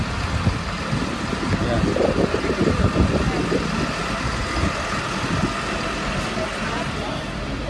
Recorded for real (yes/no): yes